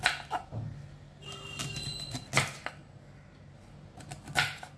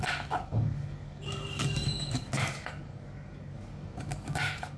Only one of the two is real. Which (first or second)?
first